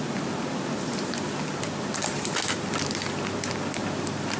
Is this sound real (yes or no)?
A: yes